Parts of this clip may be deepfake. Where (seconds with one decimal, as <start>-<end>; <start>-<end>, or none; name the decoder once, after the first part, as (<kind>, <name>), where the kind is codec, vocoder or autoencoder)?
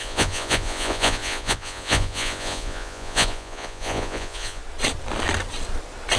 0.0-4.6 (vocoder, Vocos)